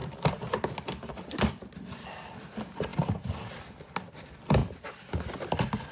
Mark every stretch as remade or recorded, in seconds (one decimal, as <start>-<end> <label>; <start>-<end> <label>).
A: 0.0-5.9 recorded